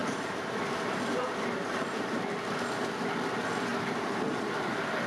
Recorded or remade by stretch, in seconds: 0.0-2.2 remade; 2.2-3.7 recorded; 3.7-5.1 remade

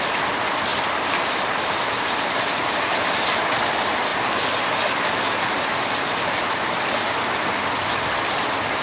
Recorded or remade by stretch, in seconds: 0.0-4.1 remade; 4.1-7.7 recorded; 7.7-8.8 remade